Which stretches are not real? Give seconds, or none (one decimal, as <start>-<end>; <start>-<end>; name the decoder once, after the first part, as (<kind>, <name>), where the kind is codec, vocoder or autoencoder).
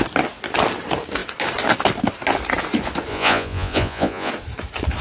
3.1-4.3 (vocoder, Vocos)